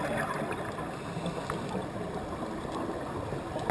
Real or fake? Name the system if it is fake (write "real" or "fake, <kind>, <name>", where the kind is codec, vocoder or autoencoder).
real